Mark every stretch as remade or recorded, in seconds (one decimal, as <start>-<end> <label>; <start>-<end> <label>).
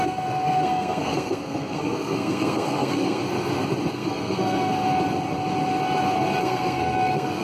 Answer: 0.0-3.2 remade; 3.2-3.9 recorded; 3.9-4.7 remade; 4.7-6.4 recorded; 6.4-7.4 remade